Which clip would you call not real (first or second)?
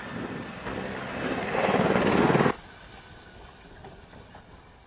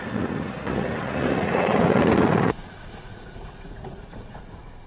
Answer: second